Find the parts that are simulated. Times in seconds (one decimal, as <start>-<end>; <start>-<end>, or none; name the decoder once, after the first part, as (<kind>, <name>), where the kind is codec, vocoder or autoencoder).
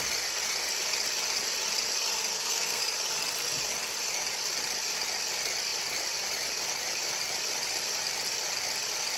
2.3-2.8 (codec, SNAC)